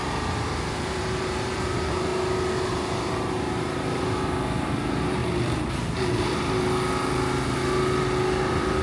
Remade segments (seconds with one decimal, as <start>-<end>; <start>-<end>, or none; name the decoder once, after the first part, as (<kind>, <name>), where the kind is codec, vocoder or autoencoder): 0.0-2.1 (vocoder, BigVGAN v2); 2.7-5.2; 8.4-8.8